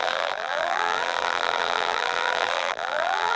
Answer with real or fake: fake